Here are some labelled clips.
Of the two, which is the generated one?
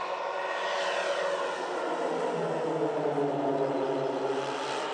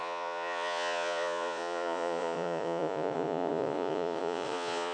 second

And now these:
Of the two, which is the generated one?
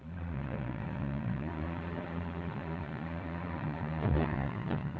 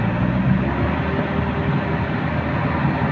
first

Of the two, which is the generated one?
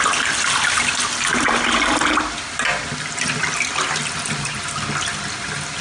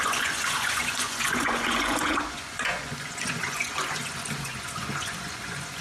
second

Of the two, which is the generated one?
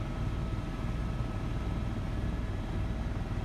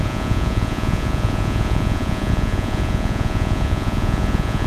second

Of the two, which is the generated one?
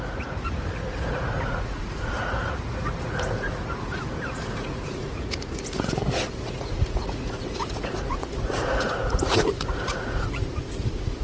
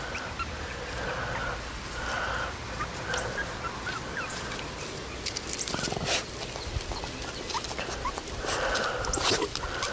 first